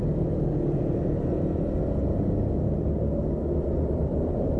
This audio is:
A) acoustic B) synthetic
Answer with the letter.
A